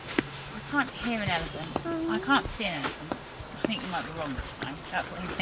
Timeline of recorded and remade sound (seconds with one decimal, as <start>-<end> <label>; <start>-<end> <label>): 0.0-0.7 remade; 0.7-2.5 recorded; 2.5-3.4 remade; 3.4-5.4 recorded

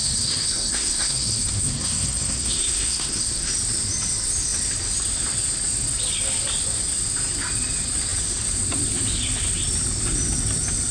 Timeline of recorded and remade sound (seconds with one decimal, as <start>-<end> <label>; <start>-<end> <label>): 0.0-3.5 remade; 3.5-10.9 recorded

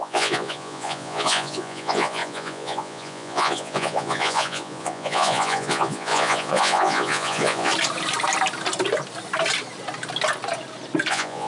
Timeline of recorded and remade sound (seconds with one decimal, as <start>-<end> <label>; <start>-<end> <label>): 0.0-7.7 remade; 7.7-11.1 recorded; 11.1-11.5 remade

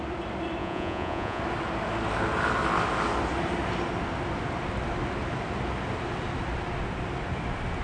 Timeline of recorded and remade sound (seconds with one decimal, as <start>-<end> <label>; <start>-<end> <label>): 0.0-0.6 recorded; 0.6-1.4 remade; 1.4-7.8 recorded

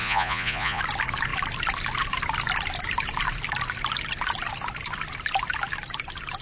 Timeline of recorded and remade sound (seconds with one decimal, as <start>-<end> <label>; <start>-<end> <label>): 0.0-0.8 remade; 0.8-6.4 recorded

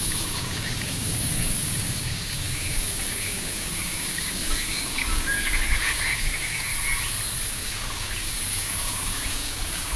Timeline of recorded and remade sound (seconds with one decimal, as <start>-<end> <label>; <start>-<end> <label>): 0.0-6.7 remade; 6.7-7.5 recorded; 7.5-10.0 remade

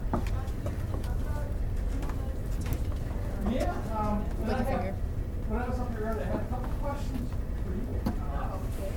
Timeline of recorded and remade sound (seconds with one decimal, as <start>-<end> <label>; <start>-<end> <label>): 0.0-7.9 recorded; 7.9-8.4 remade; 8.4-9.0 recorded